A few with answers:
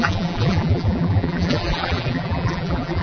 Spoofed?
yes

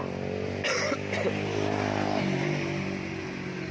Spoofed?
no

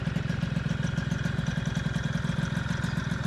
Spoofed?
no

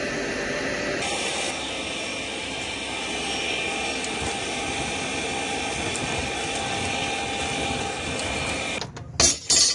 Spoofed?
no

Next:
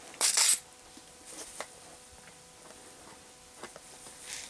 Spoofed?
no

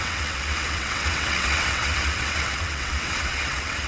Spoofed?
yes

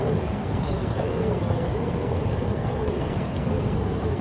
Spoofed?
yes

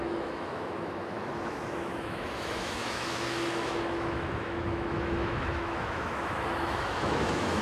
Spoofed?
yes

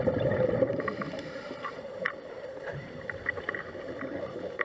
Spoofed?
yes